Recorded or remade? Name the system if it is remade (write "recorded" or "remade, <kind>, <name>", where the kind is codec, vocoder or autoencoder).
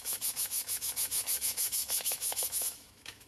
remade, autoencoder, DAC-VAE